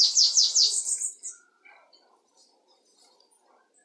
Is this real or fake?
real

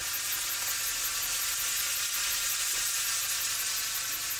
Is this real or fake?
real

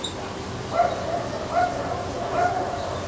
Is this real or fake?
real